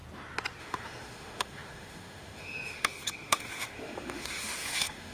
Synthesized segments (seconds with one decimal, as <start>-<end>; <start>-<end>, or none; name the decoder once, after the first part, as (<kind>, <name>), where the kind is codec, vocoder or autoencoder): 0.6-5.1 (autoencoder, DAC-VAE)